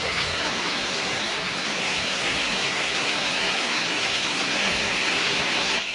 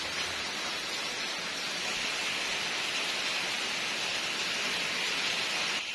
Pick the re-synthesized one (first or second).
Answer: first